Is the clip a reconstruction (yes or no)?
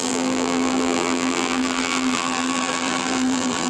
yes